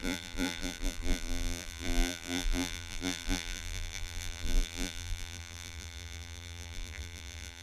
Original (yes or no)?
no